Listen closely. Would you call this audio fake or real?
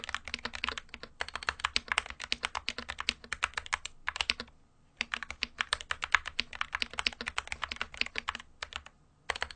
real